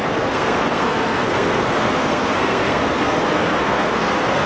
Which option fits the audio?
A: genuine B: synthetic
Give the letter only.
B